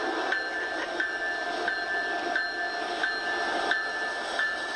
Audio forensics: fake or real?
real